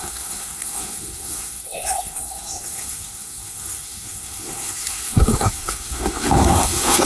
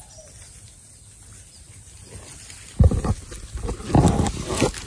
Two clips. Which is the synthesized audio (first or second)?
first